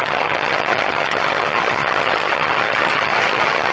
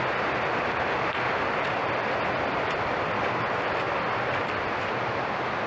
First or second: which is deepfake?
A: first